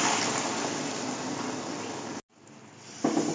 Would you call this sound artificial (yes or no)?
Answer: no